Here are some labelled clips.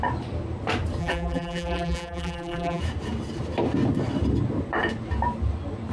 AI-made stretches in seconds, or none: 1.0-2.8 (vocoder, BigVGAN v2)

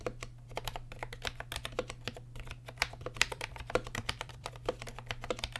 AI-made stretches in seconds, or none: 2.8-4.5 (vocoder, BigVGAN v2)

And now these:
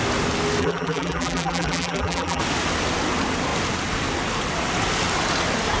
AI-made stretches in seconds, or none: 0.6-2.4 (vocoder, BigVGAN v2)

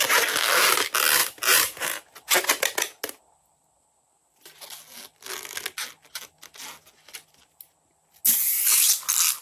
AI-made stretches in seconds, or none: 1.2-2.5 (vocoder, BigVGAN v2)